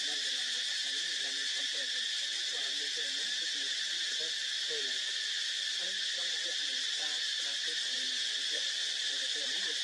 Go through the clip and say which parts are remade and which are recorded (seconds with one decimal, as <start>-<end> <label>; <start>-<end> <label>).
0.0-1.5 remade; 1.5-3.0 recorded; 3.0-4.0 remade; 4.0-6.0 recorded; 6.0-9.8 remade